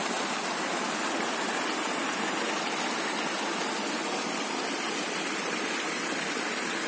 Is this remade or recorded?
recorded